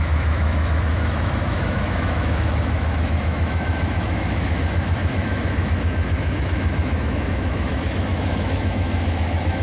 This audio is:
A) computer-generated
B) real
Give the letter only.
A